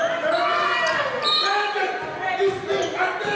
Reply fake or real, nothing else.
real